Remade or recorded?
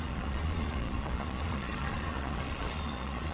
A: remade